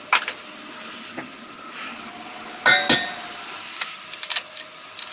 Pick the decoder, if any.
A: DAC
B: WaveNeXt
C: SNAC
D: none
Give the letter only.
D